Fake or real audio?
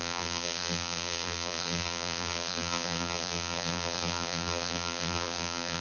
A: fake